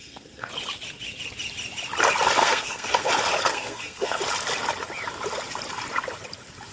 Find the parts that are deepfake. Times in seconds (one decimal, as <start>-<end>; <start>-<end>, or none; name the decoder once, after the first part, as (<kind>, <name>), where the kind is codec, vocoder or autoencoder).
0.0-0.5 (codec, SNAC); 2.4-3.1; 3.5-4.2